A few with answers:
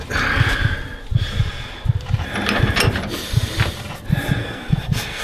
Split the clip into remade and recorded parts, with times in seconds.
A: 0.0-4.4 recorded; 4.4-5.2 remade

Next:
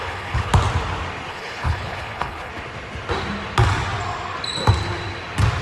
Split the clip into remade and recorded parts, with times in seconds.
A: 0.0-0.5 remade; 0.5-1.3 recorded; 1.3-2.5 remade; 2.5-5.6 recorded